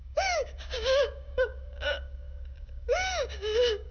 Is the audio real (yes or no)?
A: no